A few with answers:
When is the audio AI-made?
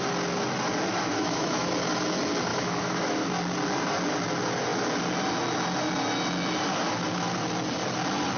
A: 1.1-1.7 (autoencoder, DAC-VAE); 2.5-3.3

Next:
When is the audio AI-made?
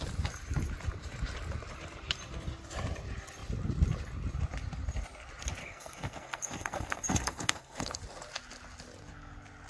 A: 5.6-8.0 (codec, SNAC)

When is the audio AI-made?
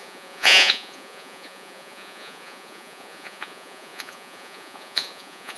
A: 0.0-5.6 (vocoder, Vocos)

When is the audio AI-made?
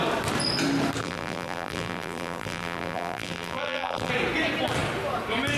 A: 1.0-4.1 (vocoder, BigVGAN v2)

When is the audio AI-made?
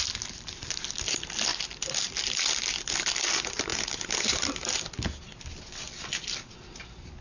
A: none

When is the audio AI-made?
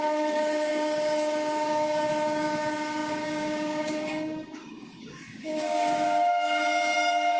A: 0.0-7.4 (codec, DAC)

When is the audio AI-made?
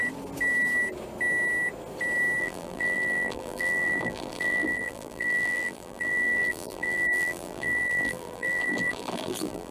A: 2.4-9.7 (vocoder, BigVGAN v2)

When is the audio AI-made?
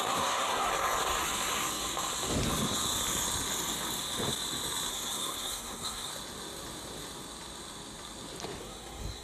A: 0.0-0.7 (codec, SNAC); 4.9-6.1; 8.6-9.2